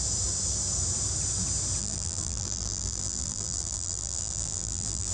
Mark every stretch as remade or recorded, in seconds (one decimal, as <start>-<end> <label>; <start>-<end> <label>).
0.0-1.8 recorded; 1.8-5.1 remade